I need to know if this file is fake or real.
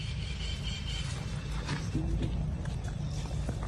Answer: real